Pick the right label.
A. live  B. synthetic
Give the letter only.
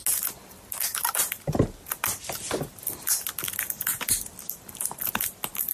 A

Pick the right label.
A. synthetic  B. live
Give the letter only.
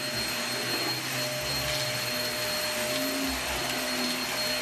B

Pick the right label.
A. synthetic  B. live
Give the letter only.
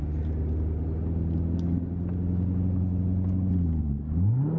B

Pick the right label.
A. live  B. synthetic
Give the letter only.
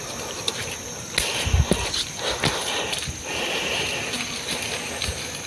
A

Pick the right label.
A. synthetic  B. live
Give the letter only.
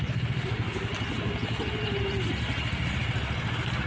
B